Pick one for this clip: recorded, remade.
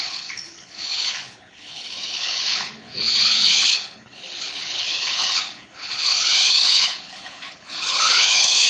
remade